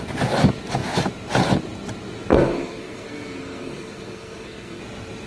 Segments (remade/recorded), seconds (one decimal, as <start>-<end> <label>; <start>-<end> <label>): 0.0-2.3 recorded; 2.3-4.8 remade; 4.8-5.3 recorded